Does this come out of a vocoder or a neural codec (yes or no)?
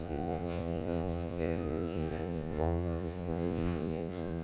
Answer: yes